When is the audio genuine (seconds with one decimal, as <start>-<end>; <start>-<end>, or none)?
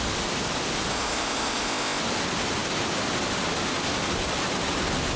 0.0-0.9; 2.0-5.2